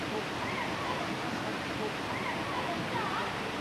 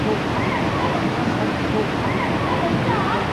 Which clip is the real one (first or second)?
second